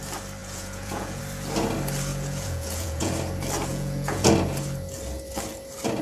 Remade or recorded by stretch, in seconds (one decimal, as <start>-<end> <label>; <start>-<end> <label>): 0.0-0.4 recorded; 0.4-1.2 remade; 1.2-2.1 recorded; 2.1-3.1 remade; 3.1-3.7 recorded; 3.7-4.3 remade; 4.3-6.0 recorded